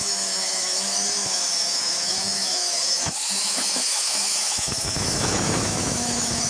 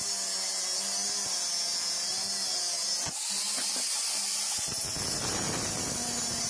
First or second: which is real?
second